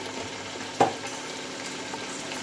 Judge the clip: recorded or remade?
recorded